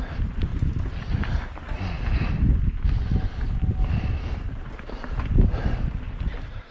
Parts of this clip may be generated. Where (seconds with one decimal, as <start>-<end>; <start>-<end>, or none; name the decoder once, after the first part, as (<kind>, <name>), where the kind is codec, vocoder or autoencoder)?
0.0-0.5 (vocoder, BigVGAN v2); 4.5-6.7